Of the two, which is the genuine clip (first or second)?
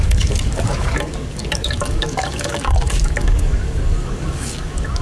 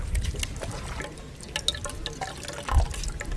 second